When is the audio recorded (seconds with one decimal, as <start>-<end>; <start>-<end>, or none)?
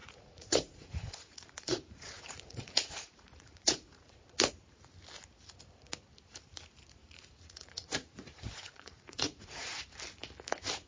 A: 4.5-7.0; 10.0-10.9